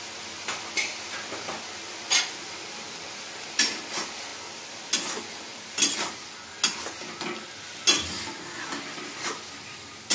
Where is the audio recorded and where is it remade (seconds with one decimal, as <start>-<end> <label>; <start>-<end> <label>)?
0.0-4.3 recorded; 4.3-4.9 remade; 4.9-5.5 recorded; 5.5-6.3 remade; 6.3-10.1 recorded